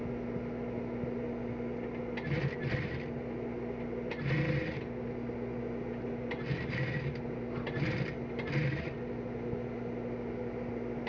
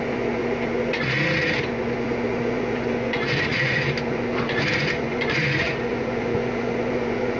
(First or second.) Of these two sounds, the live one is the first